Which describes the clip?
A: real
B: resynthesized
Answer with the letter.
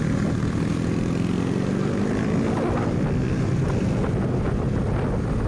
A